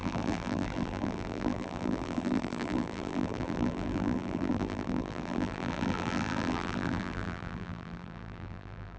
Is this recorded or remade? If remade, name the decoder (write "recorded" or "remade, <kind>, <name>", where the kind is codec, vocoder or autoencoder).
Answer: remade, vocoder, BigVGAN v2